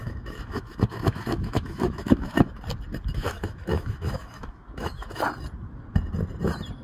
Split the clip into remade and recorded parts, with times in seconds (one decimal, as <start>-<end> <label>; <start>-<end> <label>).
0.0-2.6 remade; 2.6-3.1 recorded; 3.1-5.2 remade; 5.2-6.8 recorded